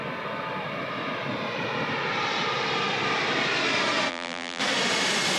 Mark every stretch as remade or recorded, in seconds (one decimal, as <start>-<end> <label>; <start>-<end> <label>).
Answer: 0.0-4.1 recorded; 4.1-4.6 remade; 4.6-5.4 recorded